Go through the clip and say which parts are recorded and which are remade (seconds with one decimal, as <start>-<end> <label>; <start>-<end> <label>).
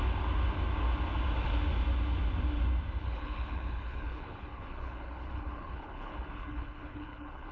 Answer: 0.0-3.0 recorded; 3.0-7.5 remade